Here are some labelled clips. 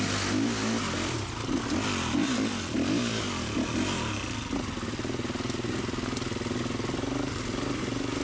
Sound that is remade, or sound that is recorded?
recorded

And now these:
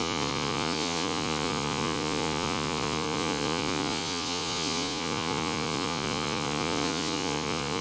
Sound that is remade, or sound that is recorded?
remade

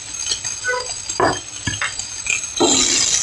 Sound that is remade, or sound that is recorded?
recorded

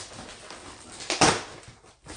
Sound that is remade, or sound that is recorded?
recorded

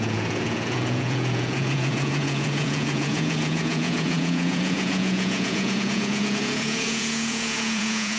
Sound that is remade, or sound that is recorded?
remade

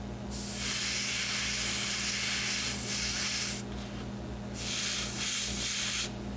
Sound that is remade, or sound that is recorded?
recorded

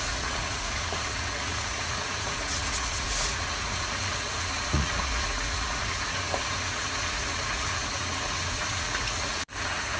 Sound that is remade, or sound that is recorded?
remade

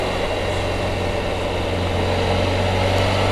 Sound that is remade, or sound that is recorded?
recorded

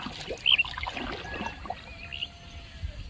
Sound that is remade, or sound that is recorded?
recorded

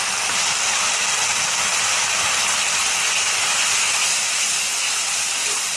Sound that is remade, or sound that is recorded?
recorded